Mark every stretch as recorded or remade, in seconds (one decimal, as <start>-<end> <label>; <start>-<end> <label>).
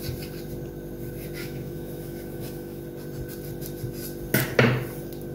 0.0-1.4 recorded; 1.4-2.8 remade; 2.8-5.3 recorded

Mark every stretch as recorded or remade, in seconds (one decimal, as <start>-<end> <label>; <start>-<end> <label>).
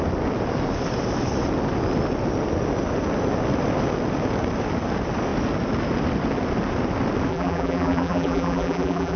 0.0-7.3 recorded; 7.3-9.2 remade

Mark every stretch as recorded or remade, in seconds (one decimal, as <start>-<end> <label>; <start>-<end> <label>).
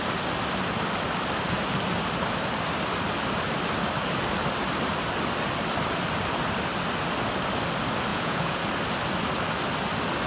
0.0-8.1 recorded; 8.1-8.6 remade; 8.6-10.3 recorded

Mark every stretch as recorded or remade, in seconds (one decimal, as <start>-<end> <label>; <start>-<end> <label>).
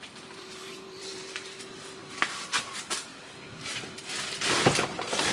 0.0-2.0 remade; 2.0-2.7 recorded; 2.7-3.1 remade; 3.1-4.0 recorded; 4.0-5.3 remade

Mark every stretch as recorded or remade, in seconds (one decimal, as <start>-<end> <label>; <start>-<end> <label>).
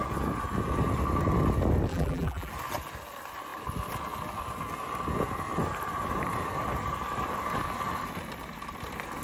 0.0-1.9 recorded; 1.9-2.5 remade; 2.5-9.2 recorded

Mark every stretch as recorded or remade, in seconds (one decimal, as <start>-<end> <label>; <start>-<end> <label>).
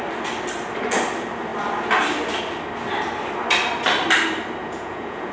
0.0-4.6 recorded; 4.6-5.3 remade